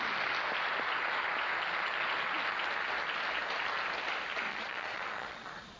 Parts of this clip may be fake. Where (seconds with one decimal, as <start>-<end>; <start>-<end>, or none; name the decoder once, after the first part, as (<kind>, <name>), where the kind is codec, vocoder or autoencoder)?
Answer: 4.5-5.8 (vocoder, Vocos)